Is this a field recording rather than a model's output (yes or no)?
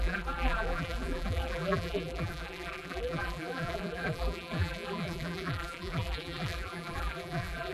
no